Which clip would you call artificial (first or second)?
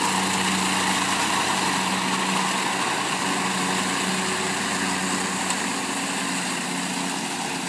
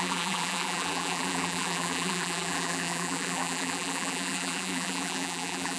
second